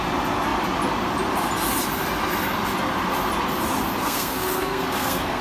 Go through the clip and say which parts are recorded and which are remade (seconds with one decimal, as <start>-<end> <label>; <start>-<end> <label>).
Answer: 0.0-4.0 recorded; 4.0-5.4 remade

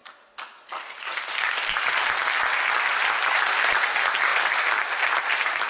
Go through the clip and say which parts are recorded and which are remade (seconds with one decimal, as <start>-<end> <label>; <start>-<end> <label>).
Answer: 0.0-3.4 remade; 3.4-5.7 recorded